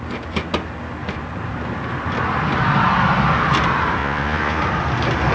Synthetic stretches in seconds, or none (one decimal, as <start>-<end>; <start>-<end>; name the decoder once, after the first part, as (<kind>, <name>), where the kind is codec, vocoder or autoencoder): 4.0-4.6 (vocoder, Vocos)